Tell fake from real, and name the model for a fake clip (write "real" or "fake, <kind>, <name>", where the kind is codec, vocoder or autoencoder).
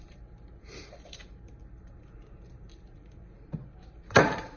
fake, vocoder, BigVGAN v2